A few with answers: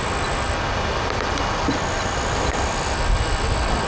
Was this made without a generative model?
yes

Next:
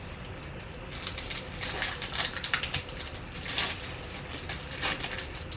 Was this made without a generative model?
yes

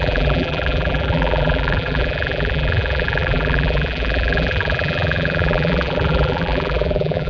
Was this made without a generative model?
no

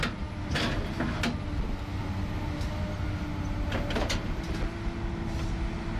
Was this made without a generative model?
yes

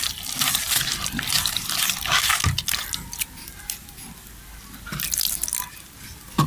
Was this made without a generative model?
yes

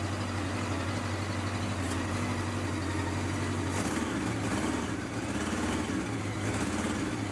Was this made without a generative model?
yes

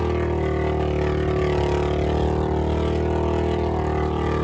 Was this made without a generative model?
yes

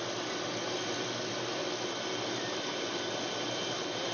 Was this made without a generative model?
yes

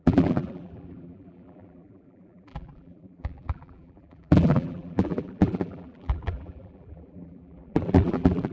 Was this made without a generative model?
no